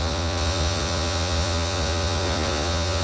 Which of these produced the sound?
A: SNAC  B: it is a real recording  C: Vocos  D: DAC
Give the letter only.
C